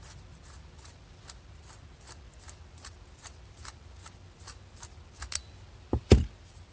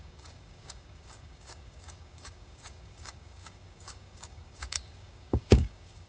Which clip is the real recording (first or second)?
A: first